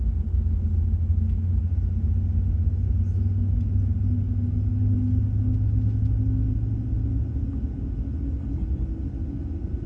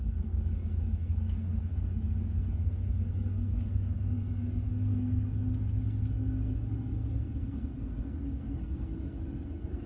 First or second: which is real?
first